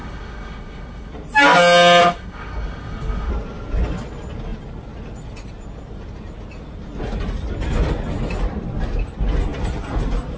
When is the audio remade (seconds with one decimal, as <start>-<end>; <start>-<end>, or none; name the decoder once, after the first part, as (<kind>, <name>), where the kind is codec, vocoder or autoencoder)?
0.0-1.1 (autoencoder, DAC-VAE); 2.0-3.3